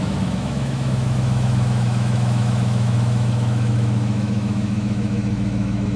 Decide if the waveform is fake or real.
fake